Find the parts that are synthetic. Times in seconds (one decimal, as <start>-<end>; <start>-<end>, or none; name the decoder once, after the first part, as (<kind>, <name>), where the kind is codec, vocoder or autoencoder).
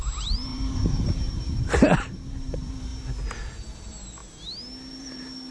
0.0-2.9 (vocoder, BigVGAN v2); 3.6-4.2; 4.9-5.5